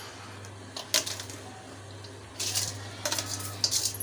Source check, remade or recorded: recorded